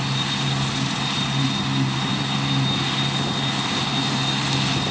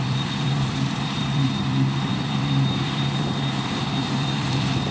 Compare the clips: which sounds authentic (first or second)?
first